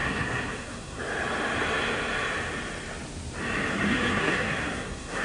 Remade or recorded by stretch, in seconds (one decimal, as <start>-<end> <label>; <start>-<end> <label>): 0.0-1.0 remade; 1.0-3.7 recorded; 3.7-5.2 remade